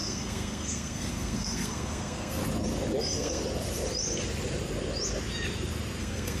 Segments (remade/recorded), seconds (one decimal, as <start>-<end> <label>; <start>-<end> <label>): 0.0-2.4 remade; 2.4-3.0 recorded; 3.0-3.4 remade; 3.4-6.0 recorded; 6.0-6.4 remade